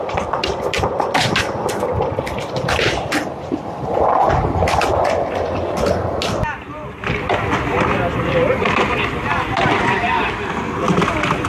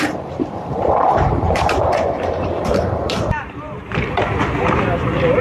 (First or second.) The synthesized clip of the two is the second